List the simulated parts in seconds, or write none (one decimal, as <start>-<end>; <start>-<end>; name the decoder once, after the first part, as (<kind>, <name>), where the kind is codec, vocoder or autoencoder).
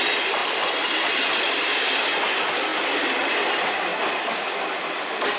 0.4-1.6 (vocoder, BigVGAN v2); 3.9-5.4